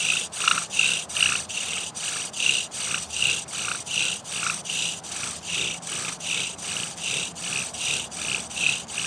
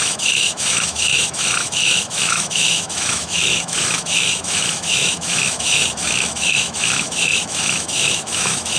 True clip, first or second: first